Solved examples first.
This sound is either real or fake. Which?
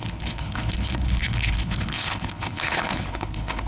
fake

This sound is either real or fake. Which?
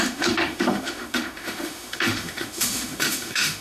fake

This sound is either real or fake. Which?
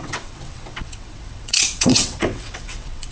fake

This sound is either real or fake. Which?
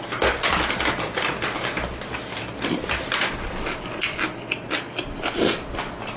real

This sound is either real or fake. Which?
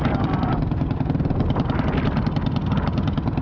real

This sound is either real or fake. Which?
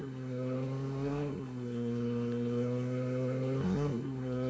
fake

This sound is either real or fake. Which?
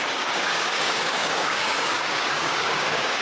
fake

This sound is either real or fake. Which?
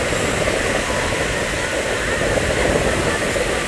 real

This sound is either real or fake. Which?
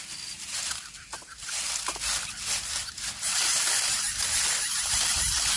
real